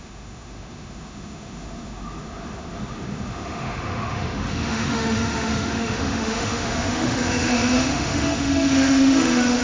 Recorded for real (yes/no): no